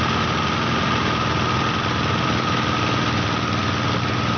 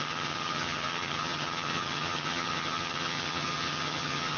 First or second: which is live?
first